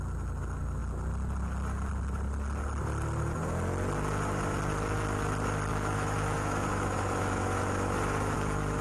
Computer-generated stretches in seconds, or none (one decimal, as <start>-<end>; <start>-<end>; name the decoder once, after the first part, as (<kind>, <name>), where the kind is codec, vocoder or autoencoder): 5.7-8.8 (autoencoder, DAC-VAE)